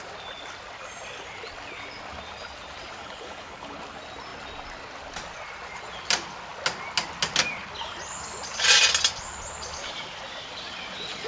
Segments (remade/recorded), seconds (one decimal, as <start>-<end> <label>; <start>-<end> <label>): 0.0-3.0 recorded; 3.0-3.8 remade; 3.8-11.3 recorded

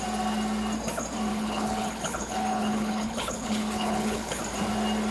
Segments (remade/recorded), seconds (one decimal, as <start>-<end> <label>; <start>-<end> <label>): 0.0-1.3 recorded; 1.3-4.4 remade; 4.4-5.1 recorded

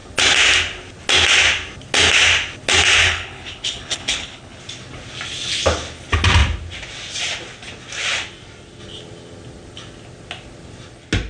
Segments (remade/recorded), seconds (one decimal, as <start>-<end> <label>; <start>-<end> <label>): 0.0-3.0 recorded; 3.0-4.6 remade; 4.6-11.3 recorded

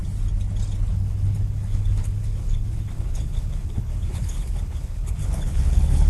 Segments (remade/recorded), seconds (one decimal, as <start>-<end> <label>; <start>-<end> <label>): 0.0-0.9 recorded; 0.9-6.1 remade

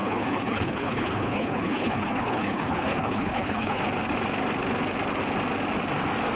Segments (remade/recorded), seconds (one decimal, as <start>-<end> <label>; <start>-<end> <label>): 0.0-3.8 remade; 3.8-6.4 recorded

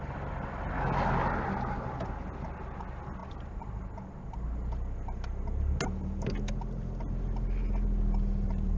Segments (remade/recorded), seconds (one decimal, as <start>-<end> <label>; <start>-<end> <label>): 0.0-8.8 recorded

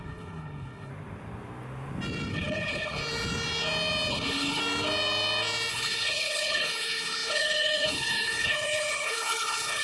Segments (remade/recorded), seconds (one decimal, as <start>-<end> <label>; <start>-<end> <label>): 0.0-0.9 remade; 0.9-2.3 recorded; 2.3-3.0 remade; 3.0-4.1 recorded; 4.1-4.6 remade; 4.6-5.7 recorded; 5.7-9.8 remade